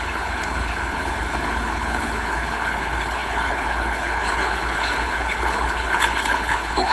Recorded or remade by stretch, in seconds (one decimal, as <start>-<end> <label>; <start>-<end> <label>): 0.0-6.9 remade